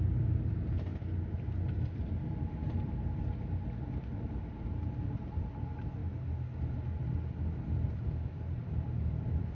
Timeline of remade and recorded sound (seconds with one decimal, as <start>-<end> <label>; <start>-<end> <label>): 0.0-6.0 remade; 6.0-7.3 recorded; 7.3-9.5 remade